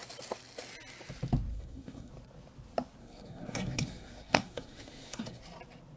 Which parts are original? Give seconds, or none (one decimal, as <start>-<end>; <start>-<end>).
0.0-1.5; 2.1-3.0; 5.4-6.0